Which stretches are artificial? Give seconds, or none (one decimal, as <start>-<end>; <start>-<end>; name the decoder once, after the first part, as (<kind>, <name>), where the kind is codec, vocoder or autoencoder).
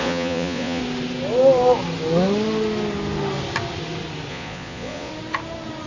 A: 0.0-0.8 (vocoder, Vocos); 4.3-5.1